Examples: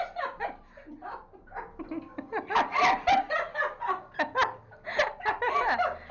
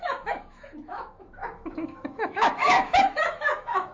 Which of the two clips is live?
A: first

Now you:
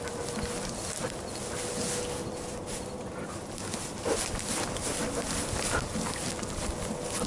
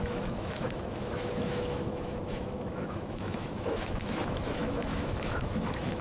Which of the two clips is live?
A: first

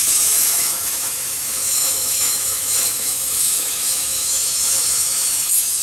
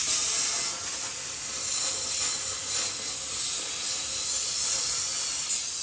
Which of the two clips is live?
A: second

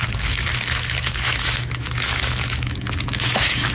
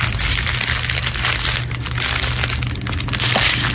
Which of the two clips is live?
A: second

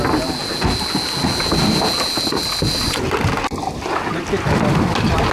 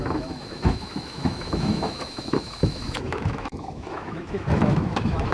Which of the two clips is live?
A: first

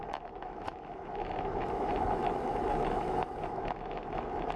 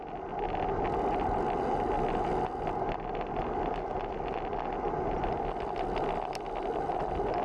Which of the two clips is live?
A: second